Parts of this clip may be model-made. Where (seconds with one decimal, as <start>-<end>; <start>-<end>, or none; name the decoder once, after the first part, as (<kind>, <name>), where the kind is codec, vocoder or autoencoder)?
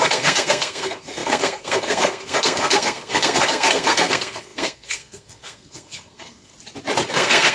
0.0-6.5 (codec, SNAC); 7.1-7.5